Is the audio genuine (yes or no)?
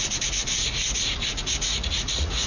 no